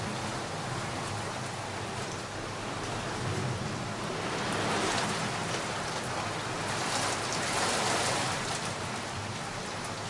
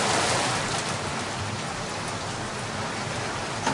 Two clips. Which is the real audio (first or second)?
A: first